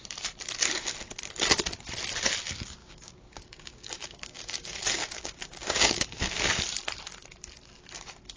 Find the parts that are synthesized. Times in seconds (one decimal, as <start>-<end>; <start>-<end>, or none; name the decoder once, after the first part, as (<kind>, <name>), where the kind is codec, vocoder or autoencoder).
2.8-6.6 (codec, DAC)